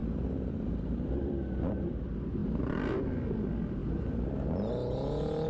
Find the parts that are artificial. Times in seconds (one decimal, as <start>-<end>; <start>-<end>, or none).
none